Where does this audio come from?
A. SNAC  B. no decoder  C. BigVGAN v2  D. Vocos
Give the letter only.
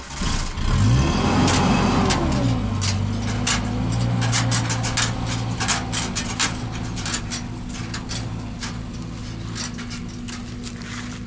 B